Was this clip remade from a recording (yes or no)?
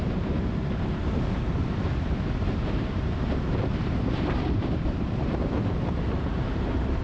yes